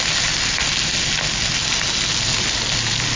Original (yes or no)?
yes